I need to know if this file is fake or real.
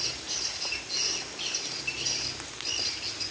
real